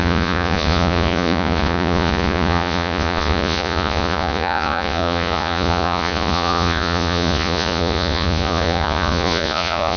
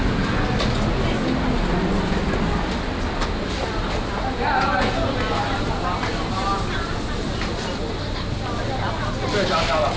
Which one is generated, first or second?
first